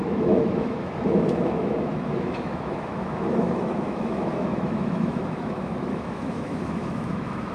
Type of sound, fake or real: fake